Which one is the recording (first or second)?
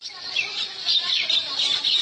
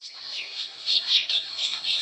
first